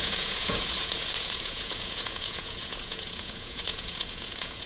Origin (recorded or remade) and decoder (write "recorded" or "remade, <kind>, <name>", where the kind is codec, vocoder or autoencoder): remade, vocoder, Vocos